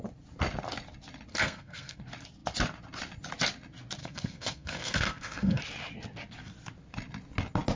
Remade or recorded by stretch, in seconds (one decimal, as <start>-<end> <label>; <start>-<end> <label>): 0.0-1.3 recorded; 1.3-2.0 remade; 2.0-4.0 recorded; 4.0-5.6 remade; 5.6-7.8 recorded